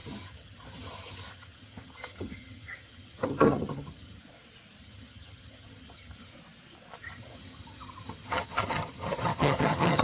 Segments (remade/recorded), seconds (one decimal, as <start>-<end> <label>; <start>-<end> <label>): 0.0-4.2 remade; 4.2-4.8 recorded; 4.8-6.3 remade; 6.3-7.0 recorded; 7.0-10.0 remade